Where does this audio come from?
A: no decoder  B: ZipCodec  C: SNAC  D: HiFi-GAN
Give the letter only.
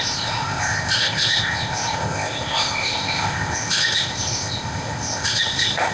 B